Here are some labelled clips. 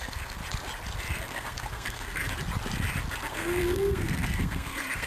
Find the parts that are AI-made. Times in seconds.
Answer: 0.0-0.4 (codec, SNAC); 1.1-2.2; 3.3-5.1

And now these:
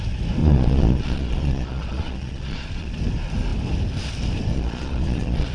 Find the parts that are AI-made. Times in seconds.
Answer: 0.4-2.9 (vocoder, Vocos); 4.5-5.5

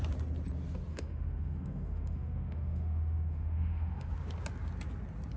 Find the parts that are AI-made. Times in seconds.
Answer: 0.9-4.1 (autoencoder, DAC-VAE)

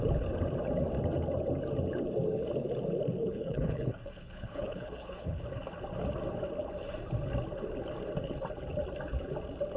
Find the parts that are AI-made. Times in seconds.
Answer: 3.2-5.4 (codec, HILCodec)

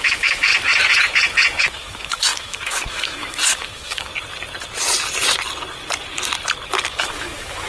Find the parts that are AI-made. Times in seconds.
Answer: 0.0-0.5 (autoencoder, DAC-VAE); 1.6-4.1; 6.9-7.7